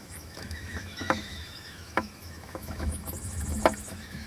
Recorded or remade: remade